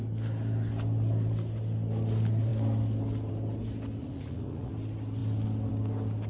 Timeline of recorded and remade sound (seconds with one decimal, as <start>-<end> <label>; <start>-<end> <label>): 0.0-4.0 recorded; 4.0-4.7 remade; 4.7-6.3 recorded